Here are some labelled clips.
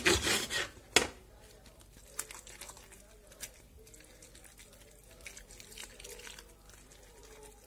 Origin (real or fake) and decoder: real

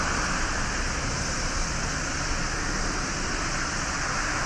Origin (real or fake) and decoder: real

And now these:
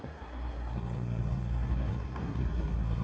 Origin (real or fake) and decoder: fake, codec, SNAC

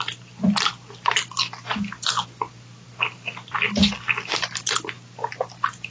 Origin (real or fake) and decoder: real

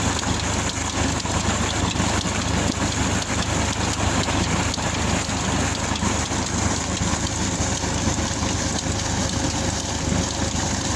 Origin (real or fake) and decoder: real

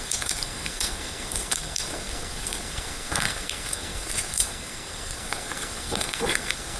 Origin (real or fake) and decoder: fake, codec, SNAC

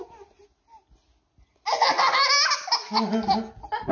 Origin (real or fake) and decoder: real